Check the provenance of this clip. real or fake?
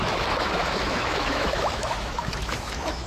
fake